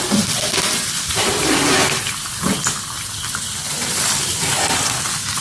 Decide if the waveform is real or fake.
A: fake